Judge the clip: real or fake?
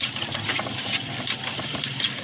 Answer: fake